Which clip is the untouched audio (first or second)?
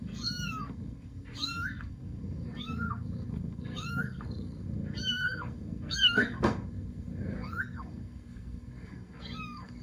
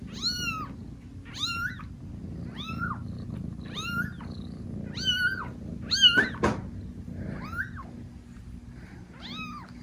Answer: second